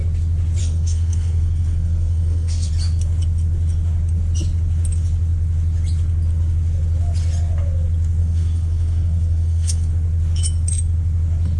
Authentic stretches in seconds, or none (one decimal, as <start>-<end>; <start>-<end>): 0.0-0.6; 2.7-8.2; 9.9-11.6